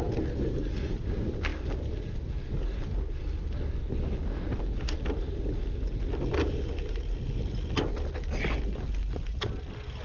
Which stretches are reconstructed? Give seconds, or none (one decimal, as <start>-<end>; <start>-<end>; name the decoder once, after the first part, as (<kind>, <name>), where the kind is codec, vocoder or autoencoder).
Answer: none